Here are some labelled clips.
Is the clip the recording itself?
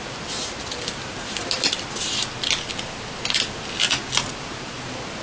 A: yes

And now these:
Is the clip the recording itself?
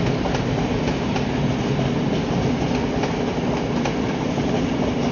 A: yes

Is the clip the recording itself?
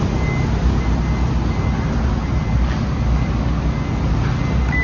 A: yes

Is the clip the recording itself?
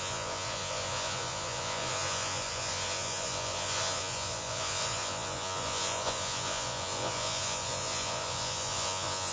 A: no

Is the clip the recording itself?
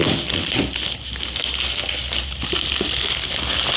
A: yes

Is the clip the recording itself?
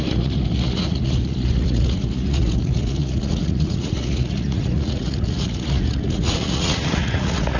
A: no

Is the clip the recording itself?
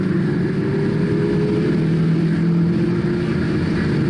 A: yes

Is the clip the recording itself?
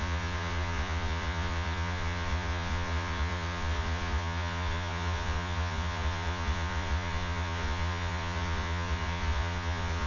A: no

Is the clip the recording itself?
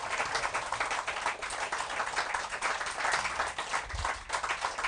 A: yes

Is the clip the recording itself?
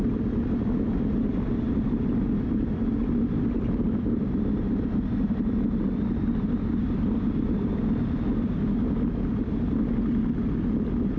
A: yes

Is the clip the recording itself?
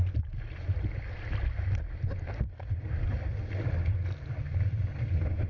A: yes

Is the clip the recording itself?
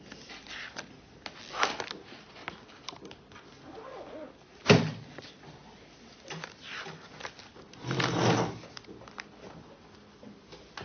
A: yes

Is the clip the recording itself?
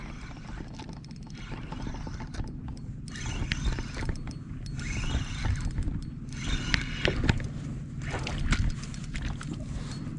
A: yes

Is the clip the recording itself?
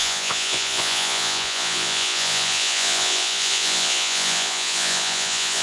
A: no